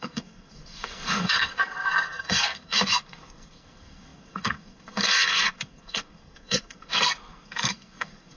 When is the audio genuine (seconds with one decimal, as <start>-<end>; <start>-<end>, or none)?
none